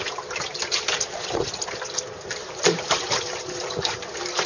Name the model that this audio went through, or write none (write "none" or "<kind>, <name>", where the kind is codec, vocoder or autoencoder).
vocoder, BigVGAN v2